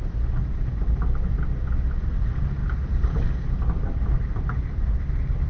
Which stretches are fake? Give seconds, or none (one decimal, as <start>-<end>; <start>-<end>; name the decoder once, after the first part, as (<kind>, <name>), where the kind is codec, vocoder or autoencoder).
none